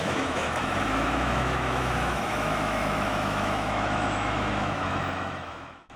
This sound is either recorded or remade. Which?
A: remade